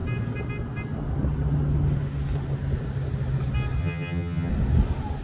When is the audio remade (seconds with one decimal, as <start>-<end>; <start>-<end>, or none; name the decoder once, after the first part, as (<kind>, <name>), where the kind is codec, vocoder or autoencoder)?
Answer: 3.8-4.5 (vocoder, HiFi-GAN)